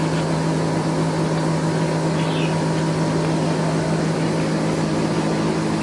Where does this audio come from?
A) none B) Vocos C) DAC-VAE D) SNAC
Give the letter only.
A